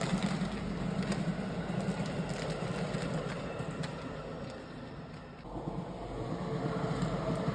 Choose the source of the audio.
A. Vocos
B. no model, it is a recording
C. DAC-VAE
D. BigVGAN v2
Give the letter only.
B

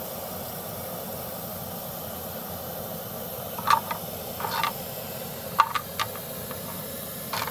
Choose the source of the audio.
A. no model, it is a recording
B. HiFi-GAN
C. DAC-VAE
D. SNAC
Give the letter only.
A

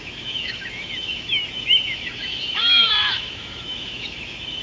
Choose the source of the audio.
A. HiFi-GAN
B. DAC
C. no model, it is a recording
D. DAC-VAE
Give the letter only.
D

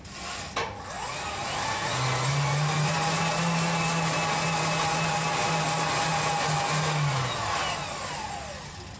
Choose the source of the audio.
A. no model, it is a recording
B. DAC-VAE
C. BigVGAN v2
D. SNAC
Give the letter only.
A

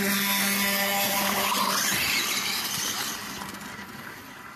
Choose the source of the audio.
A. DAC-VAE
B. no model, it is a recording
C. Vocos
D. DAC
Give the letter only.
B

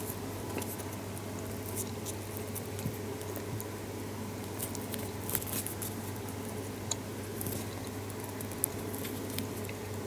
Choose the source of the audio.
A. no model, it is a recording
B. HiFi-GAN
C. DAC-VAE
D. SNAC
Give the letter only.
A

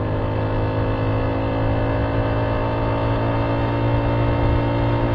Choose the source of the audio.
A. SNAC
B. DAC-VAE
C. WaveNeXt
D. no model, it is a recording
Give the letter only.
D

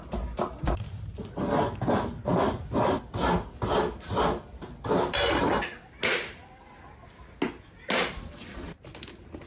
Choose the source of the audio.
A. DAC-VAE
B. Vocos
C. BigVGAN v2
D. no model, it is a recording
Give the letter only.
D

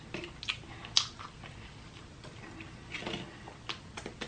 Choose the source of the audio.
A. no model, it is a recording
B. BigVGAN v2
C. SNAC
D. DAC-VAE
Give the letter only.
A